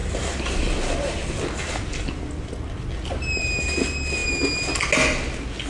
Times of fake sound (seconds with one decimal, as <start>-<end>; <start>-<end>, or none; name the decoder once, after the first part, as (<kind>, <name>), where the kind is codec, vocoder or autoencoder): none